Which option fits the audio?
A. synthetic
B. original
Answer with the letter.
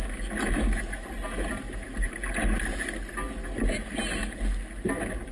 B